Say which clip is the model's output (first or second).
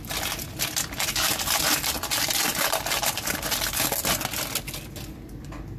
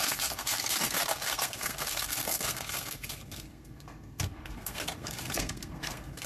second